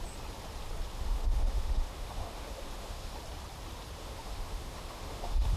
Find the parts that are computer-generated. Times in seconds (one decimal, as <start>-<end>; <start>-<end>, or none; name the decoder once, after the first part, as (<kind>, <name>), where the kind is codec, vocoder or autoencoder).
0.9-3.1 (autoencoder, DAC-VAE); 4.0-5.6

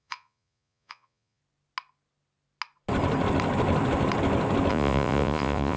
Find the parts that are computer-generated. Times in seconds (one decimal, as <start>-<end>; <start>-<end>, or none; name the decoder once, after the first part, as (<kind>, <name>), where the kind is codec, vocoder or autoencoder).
0.0-1.4 (vocoder, Vocos); 4.7-5.8

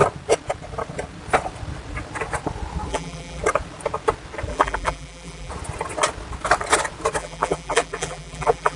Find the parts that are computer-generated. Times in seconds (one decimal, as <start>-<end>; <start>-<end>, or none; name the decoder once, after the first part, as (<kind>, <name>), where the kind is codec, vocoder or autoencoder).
2.9-3.4 (vocoder, BigVGAN v2); 4.5-5.5; 7.2-8.8

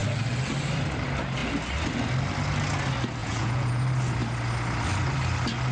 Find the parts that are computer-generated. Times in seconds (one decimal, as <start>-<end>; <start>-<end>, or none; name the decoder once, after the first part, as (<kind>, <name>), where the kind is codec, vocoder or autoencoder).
3.2-3.8 (vocoder, Vocos)

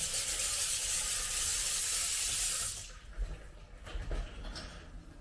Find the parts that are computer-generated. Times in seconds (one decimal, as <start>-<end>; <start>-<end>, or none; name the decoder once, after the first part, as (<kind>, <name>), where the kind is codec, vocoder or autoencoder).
none

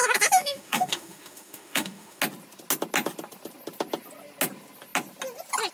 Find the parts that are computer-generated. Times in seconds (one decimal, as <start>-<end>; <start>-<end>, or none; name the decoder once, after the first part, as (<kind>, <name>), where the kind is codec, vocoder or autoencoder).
0.0-2.2 (autoencoder, DAC-VAE)